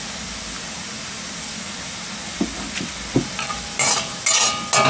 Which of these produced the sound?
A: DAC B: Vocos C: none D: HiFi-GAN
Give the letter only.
C